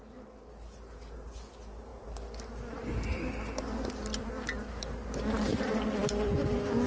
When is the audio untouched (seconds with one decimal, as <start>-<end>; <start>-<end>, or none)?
0.0-6.9